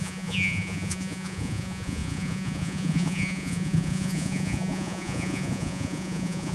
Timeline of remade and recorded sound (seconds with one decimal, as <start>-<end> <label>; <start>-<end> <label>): 0.0-6.5 remade